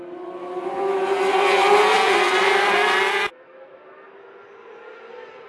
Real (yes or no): yes